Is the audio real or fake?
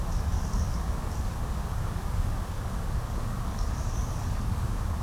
fake